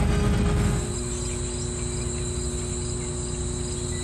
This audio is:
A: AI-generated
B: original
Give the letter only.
B